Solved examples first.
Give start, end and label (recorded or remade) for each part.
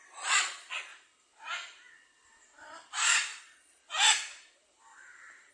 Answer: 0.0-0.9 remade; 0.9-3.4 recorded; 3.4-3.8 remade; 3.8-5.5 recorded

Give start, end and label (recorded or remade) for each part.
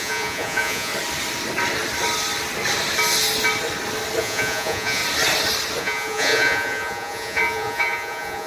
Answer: 0.0-0.9 remade; 0.9-4.2 recorded; 4.2-5.0 remade; 5.0-5.8 recorded; 5.8-8.5 remade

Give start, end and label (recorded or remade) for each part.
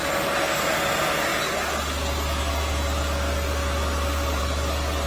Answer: 0.0-5.1 recorded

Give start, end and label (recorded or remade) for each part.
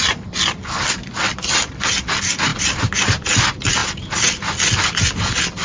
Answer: 0.0-5.6 recorded